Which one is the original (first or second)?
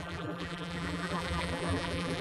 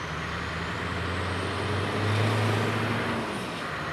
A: second